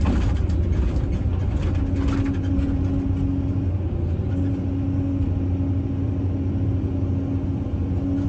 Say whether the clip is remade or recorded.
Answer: recorded